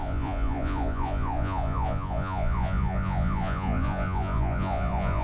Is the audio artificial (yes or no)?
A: yes